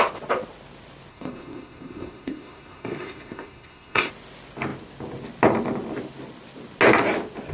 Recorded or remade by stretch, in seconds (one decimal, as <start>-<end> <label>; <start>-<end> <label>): 0.0-1.1 recorded; 1.1-4.1 remade; 4.1-7.5 recorded